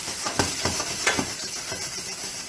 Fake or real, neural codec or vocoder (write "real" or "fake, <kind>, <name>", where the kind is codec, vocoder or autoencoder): fake, vocoder, BigVGAN v2